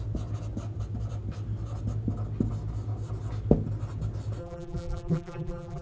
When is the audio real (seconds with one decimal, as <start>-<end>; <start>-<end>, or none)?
0.0-4.4